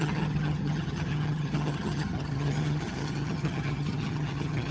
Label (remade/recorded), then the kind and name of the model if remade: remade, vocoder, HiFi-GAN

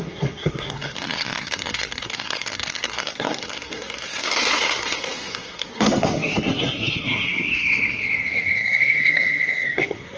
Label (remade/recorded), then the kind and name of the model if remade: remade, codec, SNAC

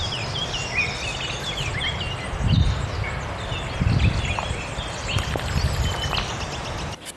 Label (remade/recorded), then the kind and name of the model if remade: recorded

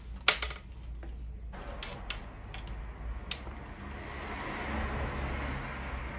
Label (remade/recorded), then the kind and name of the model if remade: recorded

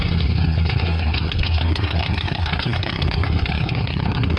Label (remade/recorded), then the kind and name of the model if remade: remade, codec, SNAC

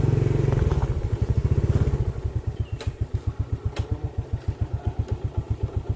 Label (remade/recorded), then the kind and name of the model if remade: recorded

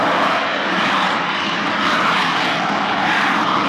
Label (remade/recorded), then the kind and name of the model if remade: remade, codec, DAC